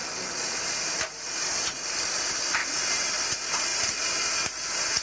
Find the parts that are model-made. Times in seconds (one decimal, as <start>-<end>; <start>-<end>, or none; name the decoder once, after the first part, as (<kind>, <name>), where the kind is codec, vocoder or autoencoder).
none